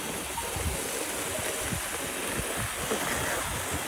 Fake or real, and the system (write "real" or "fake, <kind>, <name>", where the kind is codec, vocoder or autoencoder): real